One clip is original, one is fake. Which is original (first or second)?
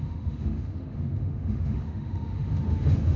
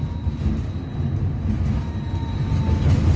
second